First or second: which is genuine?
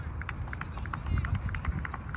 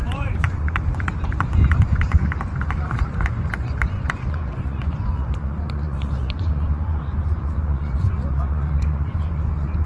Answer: first